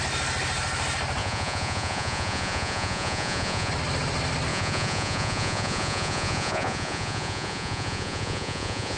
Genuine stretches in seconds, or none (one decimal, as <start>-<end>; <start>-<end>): 0.0-1.2; 3.7-4.5